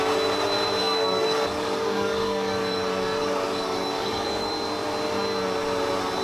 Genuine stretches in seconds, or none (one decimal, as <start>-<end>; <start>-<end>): 0.0-0.8; 4.5-6.2